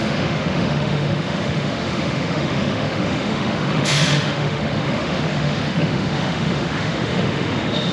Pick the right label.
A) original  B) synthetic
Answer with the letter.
B